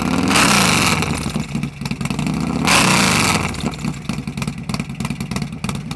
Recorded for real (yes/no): yes